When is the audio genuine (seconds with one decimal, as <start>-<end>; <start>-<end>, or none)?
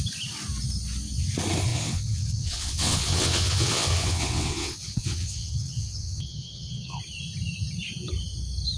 0.0-1.7; 7.0-8.8